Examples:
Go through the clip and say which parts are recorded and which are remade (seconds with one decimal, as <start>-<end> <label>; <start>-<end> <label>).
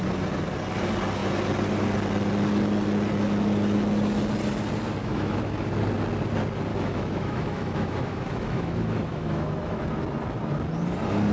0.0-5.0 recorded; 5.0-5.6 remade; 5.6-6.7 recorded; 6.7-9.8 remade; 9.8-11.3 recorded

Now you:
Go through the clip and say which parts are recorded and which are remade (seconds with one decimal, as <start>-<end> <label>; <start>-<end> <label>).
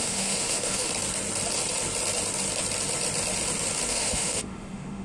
0.0-0.9 remade; 0.9-3.9 recorded; 3.9-5.0 remade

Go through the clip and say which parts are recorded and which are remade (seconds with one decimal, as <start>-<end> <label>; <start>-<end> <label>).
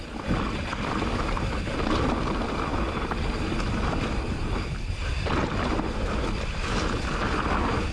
0.0-7.9 recorded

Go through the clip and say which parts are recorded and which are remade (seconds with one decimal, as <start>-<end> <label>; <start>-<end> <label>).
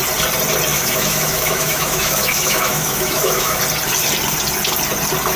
0.0-0.7 recorded; 0.7-3.6 remade; 3.6-5.4 recorded